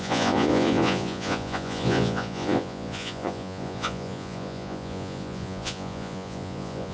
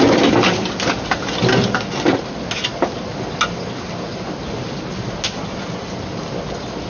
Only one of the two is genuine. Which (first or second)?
second